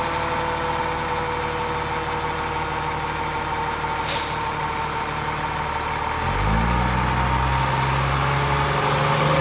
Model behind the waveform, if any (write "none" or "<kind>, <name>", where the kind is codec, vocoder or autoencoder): none